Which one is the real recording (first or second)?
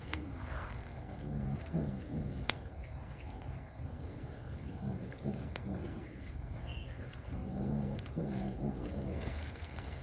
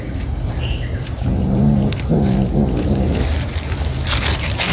second